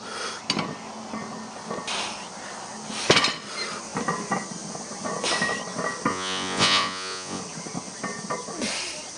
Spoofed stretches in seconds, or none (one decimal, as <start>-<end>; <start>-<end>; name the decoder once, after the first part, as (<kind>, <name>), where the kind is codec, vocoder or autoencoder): 6.1-7.4 (vocoder, Vocos)